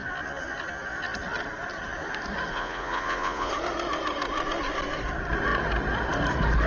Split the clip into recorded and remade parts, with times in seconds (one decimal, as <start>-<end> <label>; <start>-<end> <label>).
0.0-2.5 recorded; 2.5-3.5 remade; 3.5-6.7 recorded